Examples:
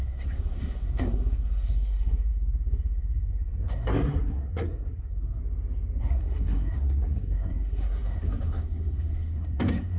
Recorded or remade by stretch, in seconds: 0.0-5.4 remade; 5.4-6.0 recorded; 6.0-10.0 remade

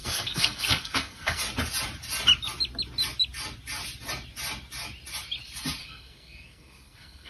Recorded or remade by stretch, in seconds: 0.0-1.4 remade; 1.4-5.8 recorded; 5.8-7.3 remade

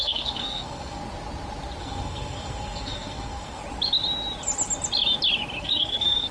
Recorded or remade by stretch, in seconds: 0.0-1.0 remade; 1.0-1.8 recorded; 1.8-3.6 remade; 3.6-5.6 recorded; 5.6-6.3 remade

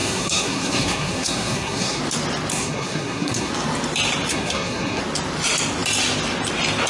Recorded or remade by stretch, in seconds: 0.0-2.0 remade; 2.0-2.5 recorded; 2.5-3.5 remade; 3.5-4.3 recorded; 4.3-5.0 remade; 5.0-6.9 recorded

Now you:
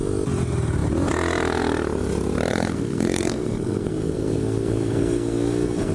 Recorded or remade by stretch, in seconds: 0.0-2.5 recorded; 2.5-5.9 remade

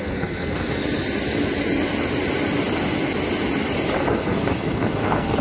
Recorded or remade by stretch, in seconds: 0.0-0.8 remade; 0.8-4.0 recorded; 4.0-5.4 remade

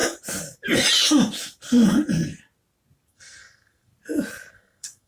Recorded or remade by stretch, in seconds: 0.0-3.1 recorded; 3.1-3.9 remade; 3.9-4.5 recorded; 4.5-5.1 remade

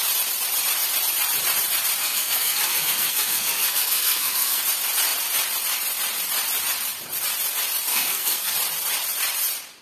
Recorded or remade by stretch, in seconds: 0.0-2.0 recorded; 2.0-4.6 remade; 4.6-7.9 recorded; 7.9-8.5 remade; 8.5-9.8 recorded